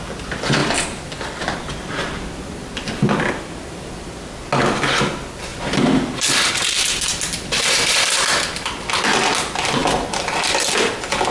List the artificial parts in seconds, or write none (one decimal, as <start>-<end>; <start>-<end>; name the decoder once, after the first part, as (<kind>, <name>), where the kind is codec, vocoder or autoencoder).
0.6-1.6 (vocoder, BigVGAN v2); 5.5-6.5